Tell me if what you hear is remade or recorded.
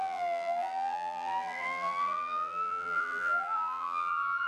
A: remade